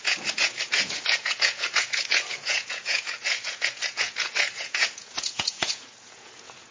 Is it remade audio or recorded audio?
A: remade